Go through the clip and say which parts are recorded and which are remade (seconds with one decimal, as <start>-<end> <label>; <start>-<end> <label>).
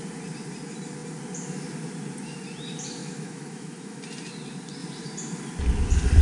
0.0-3.0 recorded; 3.0-4.0 remade; 4.0-6.2 recorded